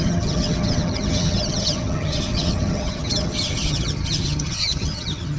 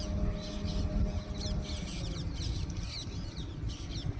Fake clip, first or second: first